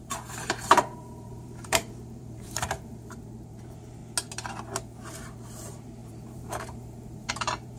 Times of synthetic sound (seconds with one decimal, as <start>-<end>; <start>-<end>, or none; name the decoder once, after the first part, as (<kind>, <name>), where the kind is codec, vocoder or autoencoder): 0.0-4.0 (vocoder, BigVGAN v2); 5.2-7.8